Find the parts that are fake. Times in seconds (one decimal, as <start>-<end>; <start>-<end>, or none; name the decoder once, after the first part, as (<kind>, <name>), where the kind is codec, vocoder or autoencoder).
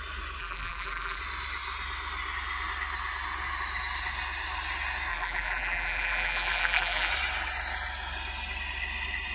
0.4-1.2 (vocoder, BigVGAN v2); 5.1-7.1